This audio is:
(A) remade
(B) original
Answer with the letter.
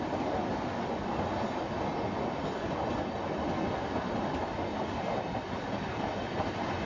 B